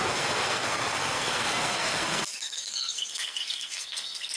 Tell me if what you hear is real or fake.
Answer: fake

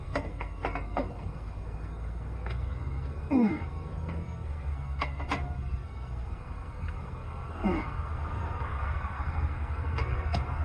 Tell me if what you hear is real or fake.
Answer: fake